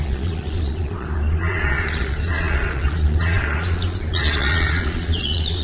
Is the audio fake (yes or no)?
yes